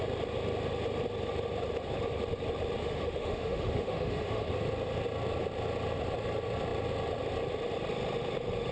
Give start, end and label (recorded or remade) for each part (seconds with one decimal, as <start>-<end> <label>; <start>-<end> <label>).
0.0-2.8 recorded; 2.8-4.5 remade; 4.5-8.7 recorded